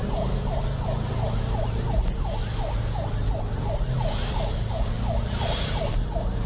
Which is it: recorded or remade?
recorded